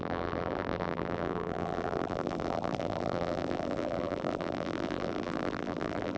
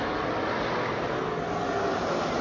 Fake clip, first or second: first